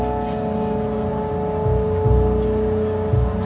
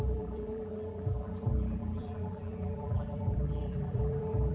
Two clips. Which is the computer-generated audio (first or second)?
second